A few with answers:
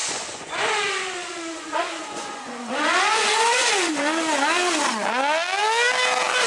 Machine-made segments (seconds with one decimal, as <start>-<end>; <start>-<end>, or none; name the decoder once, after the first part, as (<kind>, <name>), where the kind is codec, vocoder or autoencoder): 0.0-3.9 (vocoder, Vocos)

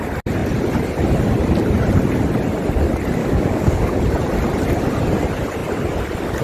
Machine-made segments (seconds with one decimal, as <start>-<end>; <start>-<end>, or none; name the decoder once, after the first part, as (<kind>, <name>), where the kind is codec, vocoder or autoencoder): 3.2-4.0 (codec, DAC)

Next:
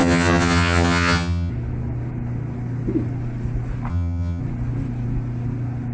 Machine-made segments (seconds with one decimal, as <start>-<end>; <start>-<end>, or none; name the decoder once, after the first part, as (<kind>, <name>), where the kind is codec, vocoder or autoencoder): 0.0-1.5 (vocoder, HiFi-GAN); 3.9-4.4

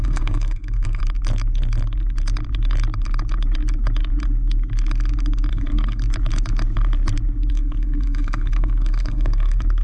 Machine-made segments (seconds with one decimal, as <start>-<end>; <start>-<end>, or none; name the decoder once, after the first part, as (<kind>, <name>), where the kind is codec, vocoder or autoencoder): 0.0-1.0 (codec, SNAC); 5.5-6.0; 7.5-9.8